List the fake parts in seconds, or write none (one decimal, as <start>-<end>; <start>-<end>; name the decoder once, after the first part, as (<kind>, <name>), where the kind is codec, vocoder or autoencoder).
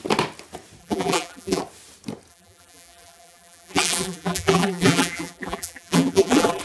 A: 0.8-1.6 (vocoder, BigVGAN v2); 2.3-6.6